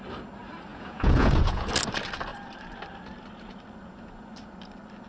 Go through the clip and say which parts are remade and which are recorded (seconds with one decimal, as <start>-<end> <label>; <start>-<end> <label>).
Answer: 0.0-0.7 recorded; 0.7-1.7 remade; 1.7-5.1 recorded